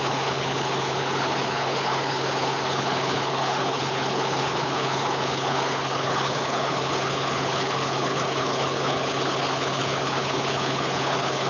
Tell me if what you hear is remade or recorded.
remade